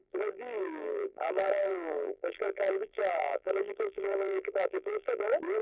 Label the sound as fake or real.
fake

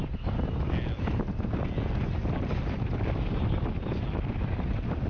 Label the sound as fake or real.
real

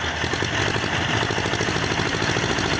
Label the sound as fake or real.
real